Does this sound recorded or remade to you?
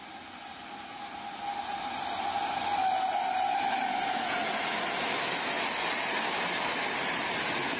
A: recorded